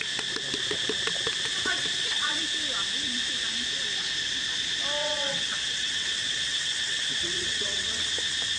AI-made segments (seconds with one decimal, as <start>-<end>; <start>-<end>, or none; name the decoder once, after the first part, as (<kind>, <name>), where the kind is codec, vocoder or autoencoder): 1.5-2.4 (vocoder, WaveNeXt); 5.0-8.1